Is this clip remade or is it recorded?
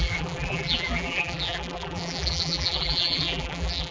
remade